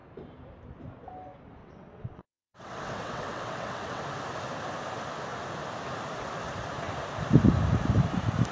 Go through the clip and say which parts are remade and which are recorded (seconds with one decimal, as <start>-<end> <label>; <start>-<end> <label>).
0.0-1.6 recorded; 1.6-4.0 remade; 4.0-8.5 recorded